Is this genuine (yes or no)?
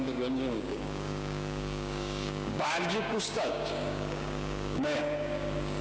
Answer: no